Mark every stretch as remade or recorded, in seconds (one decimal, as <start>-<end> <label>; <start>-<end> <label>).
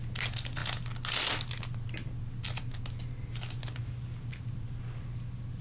0.0-5.6 recorded